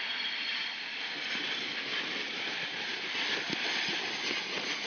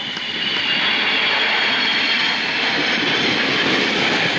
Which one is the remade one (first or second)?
first